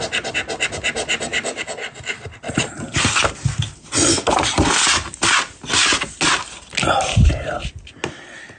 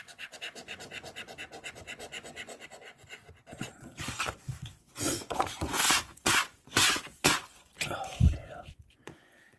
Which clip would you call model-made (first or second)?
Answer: second